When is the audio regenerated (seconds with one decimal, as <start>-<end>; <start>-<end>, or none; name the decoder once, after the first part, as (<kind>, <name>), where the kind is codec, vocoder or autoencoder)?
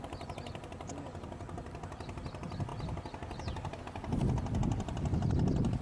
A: none